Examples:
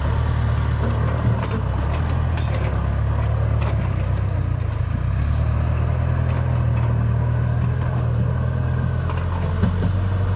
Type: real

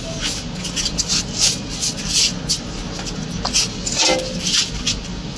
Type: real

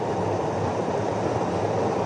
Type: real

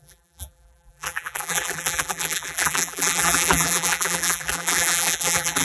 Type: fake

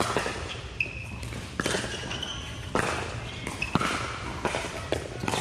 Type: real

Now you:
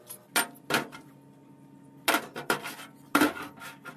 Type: real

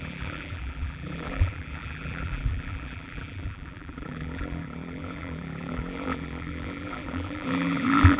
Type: fake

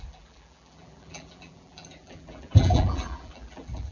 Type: fake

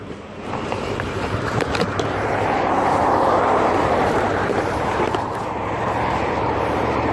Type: fake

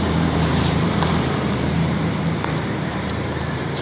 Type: fake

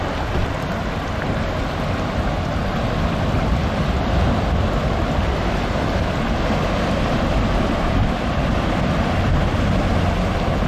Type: real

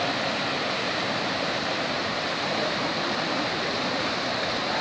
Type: fake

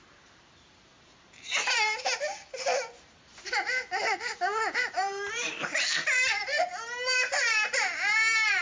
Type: fake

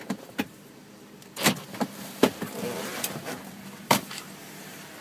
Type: fake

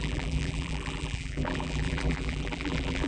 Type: fake